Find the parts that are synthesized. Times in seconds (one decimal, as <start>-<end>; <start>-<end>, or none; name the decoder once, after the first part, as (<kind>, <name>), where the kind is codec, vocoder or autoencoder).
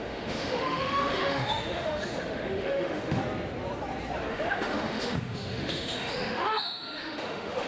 0.0-3.2 (autoencoder, DAC-VAE); 4.3-7.7